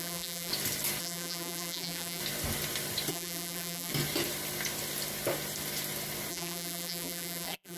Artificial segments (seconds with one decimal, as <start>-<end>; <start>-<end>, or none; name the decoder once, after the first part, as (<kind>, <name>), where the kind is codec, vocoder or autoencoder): 0.0-0.5 (vocoder, BigVGAN v2); 1.0-2.2; 3.1-3.9; 6.3-7.8